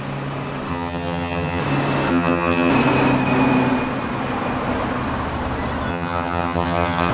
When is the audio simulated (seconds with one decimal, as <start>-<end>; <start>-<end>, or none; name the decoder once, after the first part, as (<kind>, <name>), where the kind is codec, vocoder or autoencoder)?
0.7-1.6 (vocoder, HiFi-GAN); 2.1-2.7; 5.9-7.1